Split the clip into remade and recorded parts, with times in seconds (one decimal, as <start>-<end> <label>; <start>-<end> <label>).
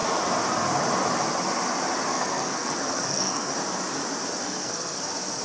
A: 0.0-2.1 recorded; 2.1-3.5 remade; 3.5-4.4 recorded; 4.4-5.0 remade; 5.0-5.4 recorded